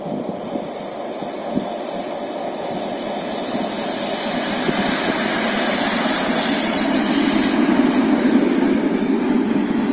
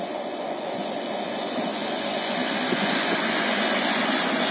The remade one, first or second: second